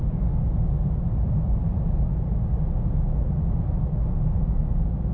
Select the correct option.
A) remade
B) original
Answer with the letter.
B